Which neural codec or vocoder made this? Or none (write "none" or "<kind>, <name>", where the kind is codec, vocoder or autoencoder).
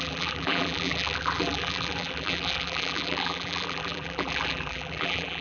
vocoder, BigVGAN v2